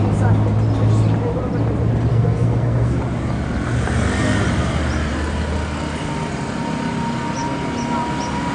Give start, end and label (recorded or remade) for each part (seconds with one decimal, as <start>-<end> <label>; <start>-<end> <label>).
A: 0.0-2.1 recorded; 2.1-3.0 remade; 3.0-8.5 recorded